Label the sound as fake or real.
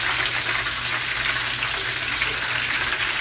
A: real